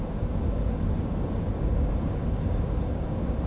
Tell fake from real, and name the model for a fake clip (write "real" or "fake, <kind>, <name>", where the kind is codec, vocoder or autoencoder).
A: fake, codec, DAC